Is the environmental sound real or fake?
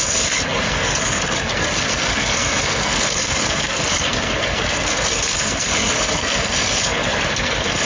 fake